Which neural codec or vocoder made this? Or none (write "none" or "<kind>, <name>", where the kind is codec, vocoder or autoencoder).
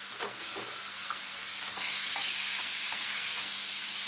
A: codec, SNAC